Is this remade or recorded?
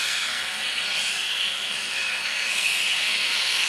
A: remade